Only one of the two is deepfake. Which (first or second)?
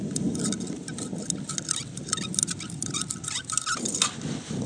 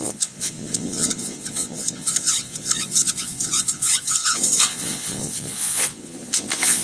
second